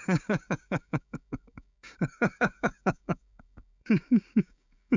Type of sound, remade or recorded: remade